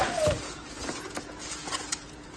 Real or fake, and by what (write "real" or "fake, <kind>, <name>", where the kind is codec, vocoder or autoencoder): fake, vocoder, Vocos